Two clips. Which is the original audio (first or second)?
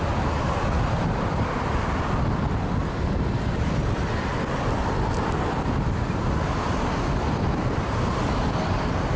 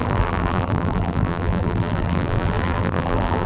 first